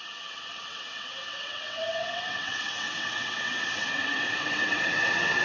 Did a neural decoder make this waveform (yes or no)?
yes